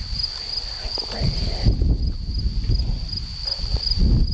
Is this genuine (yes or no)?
yes